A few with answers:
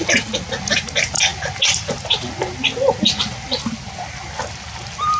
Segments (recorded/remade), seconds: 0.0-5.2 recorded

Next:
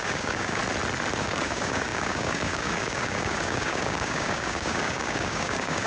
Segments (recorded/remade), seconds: 0.0-0.6 remade; 0.6-1.2 recorded; 1.2-5.9 remade

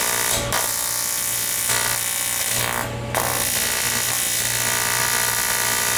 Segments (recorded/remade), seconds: 0.0-6.0 recorded

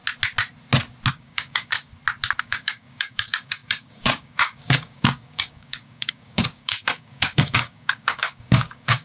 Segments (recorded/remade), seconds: 0.0-1.1 recorded; 1.1-1.9 remade; 1.9-2.4 recorded; 2.4-9.0 remade

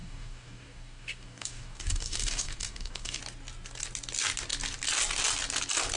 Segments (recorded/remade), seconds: 0.0-3.2 remade; 3.2-6.0 recorded